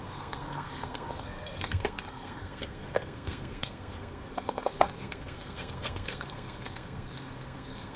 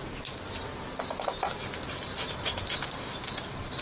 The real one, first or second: second